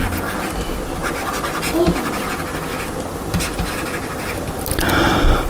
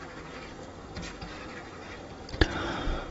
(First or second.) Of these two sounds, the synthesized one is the second